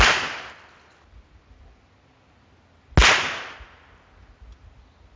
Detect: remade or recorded recorded